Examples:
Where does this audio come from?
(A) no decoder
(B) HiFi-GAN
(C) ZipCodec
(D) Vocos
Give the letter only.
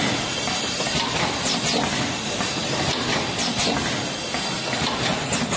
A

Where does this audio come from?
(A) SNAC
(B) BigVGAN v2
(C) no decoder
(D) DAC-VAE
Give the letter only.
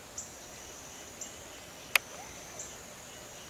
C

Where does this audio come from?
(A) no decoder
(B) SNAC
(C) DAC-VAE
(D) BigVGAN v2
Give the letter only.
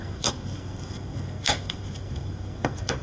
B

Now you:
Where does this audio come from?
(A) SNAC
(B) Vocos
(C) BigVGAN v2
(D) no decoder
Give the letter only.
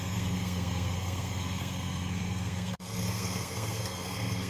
A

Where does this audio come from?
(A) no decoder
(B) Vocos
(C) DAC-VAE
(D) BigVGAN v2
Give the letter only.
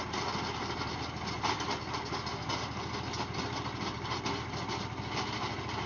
A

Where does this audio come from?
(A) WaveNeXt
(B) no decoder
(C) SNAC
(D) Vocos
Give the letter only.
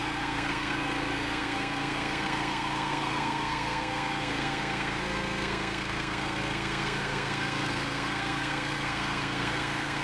C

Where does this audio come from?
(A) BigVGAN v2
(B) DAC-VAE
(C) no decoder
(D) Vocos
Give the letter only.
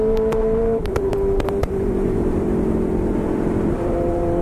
A